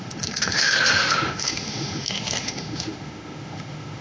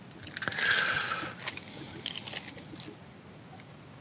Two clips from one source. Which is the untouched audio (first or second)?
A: second